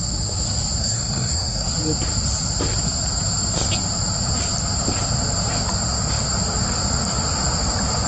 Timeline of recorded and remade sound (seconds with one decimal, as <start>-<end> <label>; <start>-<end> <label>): 0.0-0.8 recorded; 0.8-1.7 remade; 1.7-8.1 recorded